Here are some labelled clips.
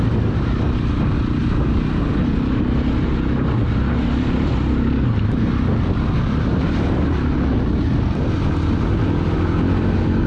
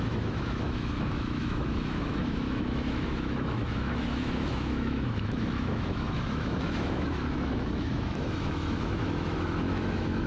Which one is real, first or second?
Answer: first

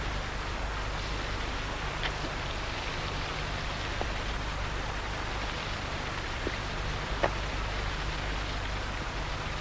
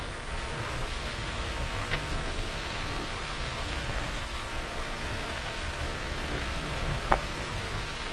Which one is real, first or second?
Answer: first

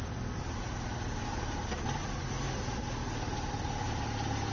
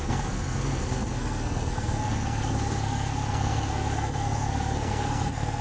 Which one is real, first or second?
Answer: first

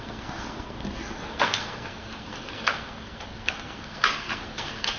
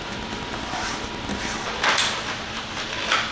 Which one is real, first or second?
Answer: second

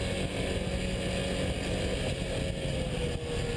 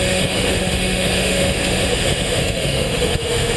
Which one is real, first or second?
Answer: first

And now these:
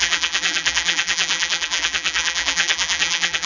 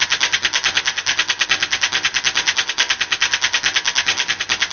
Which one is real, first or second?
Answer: second